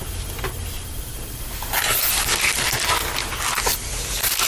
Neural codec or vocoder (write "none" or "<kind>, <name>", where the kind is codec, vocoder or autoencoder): none